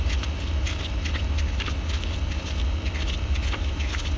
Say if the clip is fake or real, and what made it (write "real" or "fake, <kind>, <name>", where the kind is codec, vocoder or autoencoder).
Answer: real